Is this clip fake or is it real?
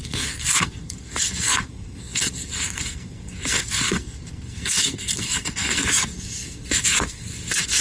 fake